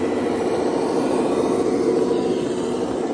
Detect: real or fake real